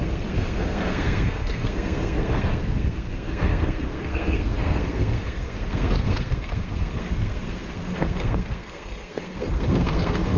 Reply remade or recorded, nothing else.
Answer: remade